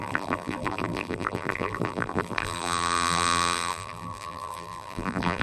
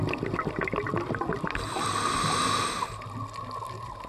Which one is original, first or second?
second